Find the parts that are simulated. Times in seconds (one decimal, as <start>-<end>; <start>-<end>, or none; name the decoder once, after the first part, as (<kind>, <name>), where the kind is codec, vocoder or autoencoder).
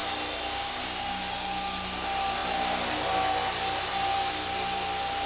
none